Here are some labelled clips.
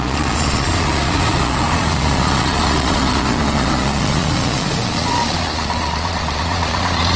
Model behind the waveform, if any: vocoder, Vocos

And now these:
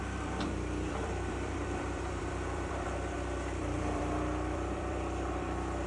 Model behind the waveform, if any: vocoder, BigVGAN v2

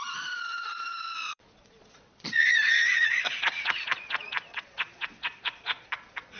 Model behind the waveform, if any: vocoder, Vocos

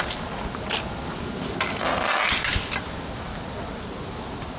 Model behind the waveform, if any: none